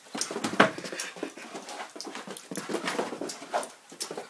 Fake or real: real